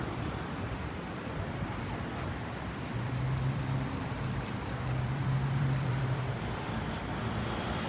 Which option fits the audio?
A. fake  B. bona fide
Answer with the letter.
A